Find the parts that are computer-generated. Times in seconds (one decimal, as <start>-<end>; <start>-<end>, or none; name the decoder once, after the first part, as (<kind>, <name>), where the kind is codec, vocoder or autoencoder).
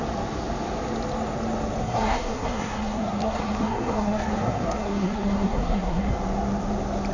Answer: 1.8-6.1 (codec, SNAC)